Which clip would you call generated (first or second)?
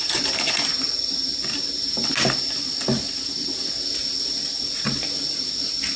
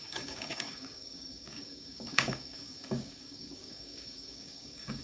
second